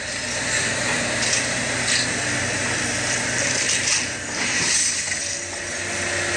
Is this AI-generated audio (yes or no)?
no